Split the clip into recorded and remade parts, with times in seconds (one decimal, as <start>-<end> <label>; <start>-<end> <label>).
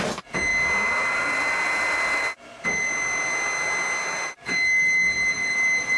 0.0-6.0 recorded